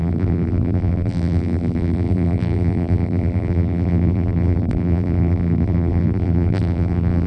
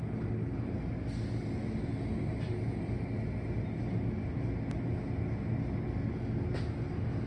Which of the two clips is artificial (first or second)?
first